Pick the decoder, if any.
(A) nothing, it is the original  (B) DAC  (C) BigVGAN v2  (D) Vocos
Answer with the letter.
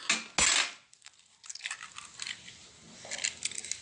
A